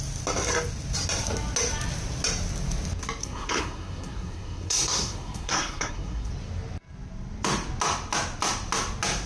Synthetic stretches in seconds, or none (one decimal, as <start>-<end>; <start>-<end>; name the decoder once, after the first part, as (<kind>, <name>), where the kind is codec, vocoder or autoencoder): 3.2-6.3 (codec, SNAC)